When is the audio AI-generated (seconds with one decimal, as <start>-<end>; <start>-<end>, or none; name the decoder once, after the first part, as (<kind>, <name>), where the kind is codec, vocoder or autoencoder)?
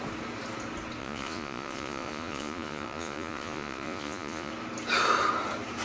1.0-4.5 (vocoder, Vocos)